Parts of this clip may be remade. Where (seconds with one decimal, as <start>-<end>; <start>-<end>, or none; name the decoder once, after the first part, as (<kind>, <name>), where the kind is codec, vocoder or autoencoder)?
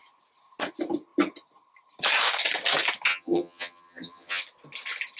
3.1-4.4 (vocoder, HiFi-GAN)